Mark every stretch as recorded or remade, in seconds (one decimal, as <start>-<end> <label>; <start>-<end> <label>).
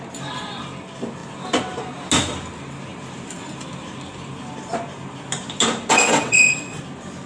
0.0-5.9 recorded; 5.9-6.8 remade; 6.8-7.3 recorded